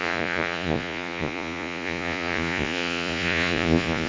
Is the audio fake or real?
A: fake